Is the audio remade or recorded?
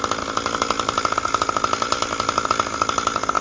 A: recorded